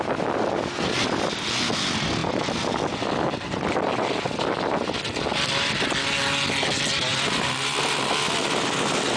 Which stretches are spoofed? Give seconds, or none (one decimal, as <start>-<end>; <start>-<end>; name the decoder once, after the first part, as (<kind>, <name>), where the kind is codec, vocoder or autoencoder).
none